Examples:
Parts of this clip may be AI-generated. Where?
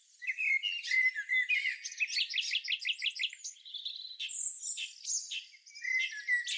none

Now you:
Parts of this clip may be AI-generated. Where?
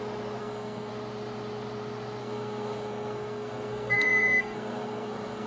0.4-0.9 (codec, SNAC); 2.2-5.5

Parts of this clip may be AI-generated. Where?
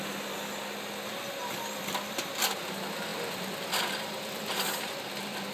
3.1-5.5 (vocoder, BigVGAN v2)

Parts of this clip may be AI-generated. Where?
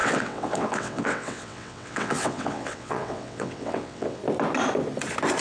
0.0-4.2 (vocoder, WaveNeXt)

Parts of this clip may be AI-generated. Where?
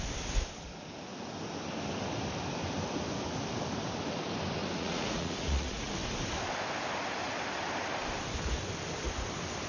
4.6-5.9 (vocoder, Vocos)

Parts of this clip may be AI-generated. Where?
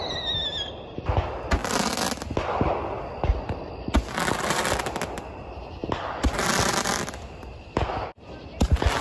none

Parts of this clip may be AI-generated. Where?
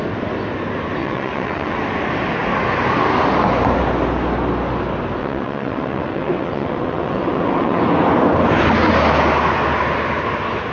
1.0-1.8 (vocoder, WaveNeXt); 5.2-7.8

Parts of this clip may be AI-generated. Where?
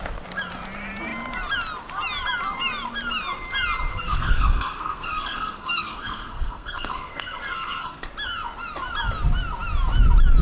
3.9-8.1 (codec, SNAC)